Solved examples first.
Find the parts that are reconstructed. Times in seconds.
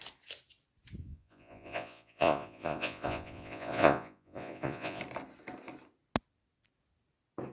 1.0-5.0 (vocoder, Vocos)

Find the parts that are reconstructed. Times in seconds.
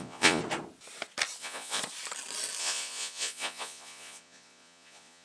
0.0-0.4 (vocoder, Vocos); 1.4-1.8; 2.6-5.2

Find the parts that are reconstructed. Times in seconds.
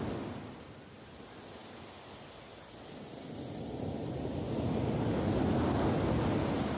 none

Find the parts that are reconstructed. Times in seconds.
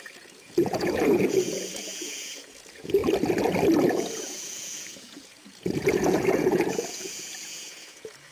0.0-3.0 (vocoder, Vocos); 3.9-8.3